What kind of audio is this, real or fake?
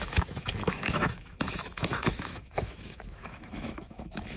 fake